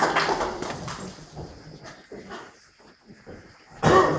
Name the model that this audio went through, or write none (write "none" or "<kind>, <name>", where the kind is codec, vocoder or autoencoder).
none